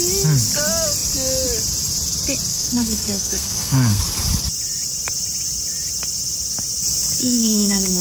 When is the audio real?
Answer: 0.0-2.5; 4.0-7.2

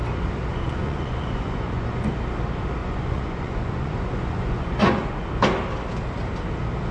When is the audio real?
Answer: 0.0-0.5; 2.1-2.8; 5.3-6.9

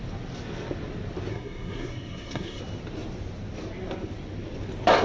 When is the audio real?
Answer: 0.0-1.3; 2.6-5.0

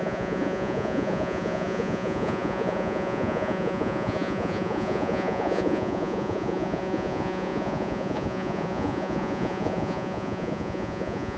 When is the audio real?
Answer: none

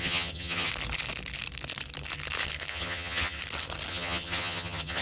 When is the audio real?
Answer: 0.7-2.7; 3.4-3.9

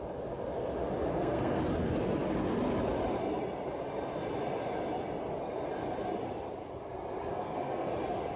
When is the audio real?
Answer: 0.0-1.1; 1.6-7.3; 7.9-8.4

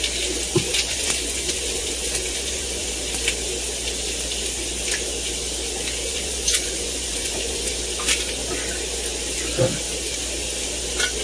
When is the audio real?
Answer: 0.0-0.5; 2.9-6.1; 7.7-11.2

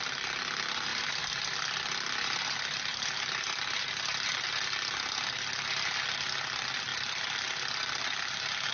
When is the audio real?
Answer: 0.0-0.9; 3.7-6.9; 7.6-8.7